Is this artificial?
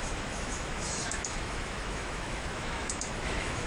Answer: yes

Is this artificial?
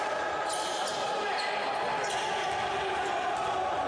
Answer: no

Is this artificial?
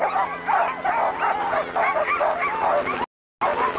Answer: no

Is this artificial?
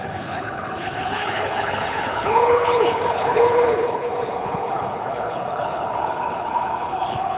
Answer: yes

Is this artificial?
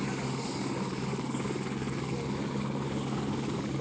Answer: yes